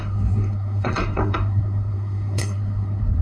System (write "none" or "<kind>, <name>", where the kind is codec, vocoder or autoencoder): codec, SNAC